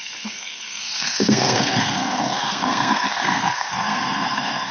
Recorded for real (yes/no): no